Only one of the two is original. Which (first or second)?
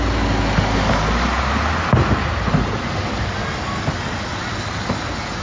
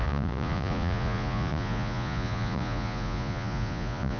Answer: first